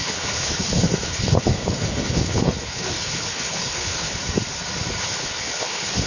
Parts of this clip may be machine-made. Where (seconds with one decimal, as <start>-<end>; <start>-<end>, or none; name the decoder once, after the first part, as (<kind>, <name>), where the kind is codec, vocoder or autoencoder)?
0.0-4.2 (codec, HILCodec); 5.0-6.1